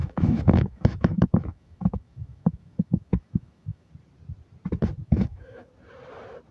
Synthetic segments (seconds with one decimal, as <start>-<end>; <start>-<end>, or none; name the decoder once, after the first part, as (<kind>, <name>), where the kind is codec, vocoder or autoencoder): 0.0-3.9 (autoencoder, DAC-VAE); 5.0-5.7